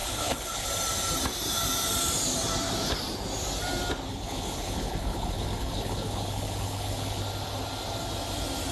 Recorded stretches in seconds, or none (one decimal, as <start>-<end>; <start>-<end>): 0.7-4.1; 7.2-8.7